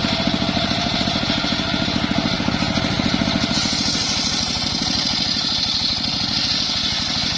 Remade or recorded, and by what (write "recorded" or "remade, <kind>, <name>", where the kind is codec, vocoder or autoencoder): recorded